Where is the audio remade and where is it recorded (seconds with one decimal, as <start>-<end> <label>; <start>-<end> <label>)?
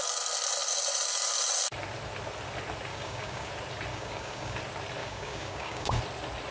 0.0-2.9 recorded; 2.9-3.5 remade; 3.5-3.9 recorded; 3.9-4.6 remade; 4.6-5.0 recorded; 5.0-6.0 remade; 6.0-6.5 recorded